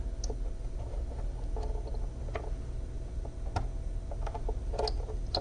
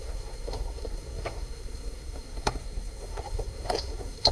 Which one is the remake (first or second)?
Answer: second